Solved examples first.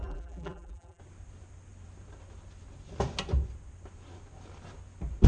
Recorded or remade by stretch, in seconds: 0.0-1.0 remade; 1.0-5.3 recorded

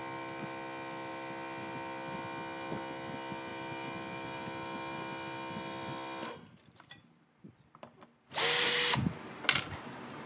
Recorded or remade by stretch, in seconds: 0.0-1.1 recorded; 1.1-2.2 remade; 2.2-3.5 recorded; 3.5-8.7 remade; 8.7-10.3 recorded